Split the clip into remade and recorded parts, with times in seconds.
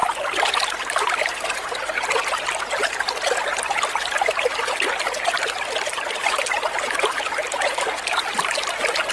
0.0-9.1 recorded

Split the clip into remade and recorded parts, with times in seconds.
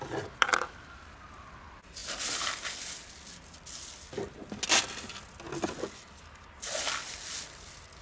0.0-8.0 recorded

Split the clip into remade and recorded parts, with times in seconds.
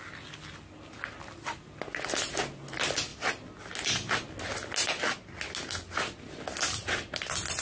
0.0-7.6 recorded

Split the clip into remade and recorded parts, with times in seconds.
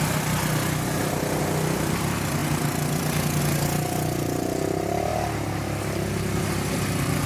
0.0-7.3 recorded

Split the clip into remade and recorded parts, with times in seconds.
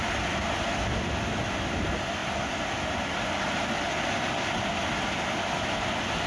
0.0-6.3 recorded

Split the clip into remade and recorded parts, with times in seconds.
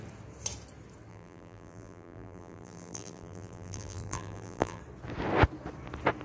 0.0-1.1 recorded; 1.1-4.8 remade; 4.8-6.2 recorded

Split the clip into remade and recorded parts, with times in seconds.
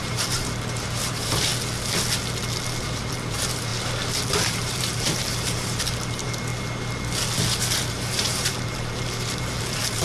0.0-1.5 remade; 1.5-2.8 recorded; 2.8-3.7 remade; 3.7-4.3 recorded; 4.3-6.5 remade; 6.5-7.6 recorded; 7.6-10.0 remade